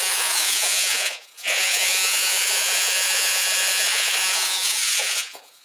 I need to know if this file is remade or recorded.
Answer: remade